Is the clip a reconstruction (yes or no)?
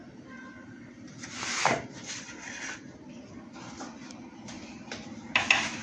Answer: no